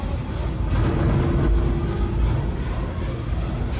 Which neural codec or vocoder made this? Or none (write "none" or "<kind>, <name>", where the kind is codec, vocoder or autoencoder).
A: none